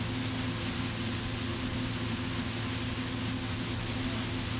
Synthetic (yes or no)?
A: no